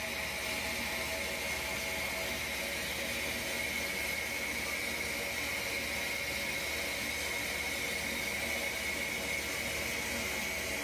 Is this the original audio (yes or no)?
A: yes